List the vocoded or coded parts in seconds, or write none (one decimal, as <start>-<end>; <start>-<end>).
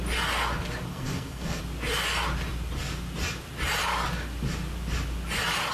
0.9-1.6